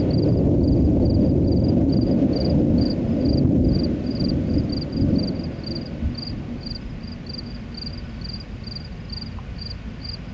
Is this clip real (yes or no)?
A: yes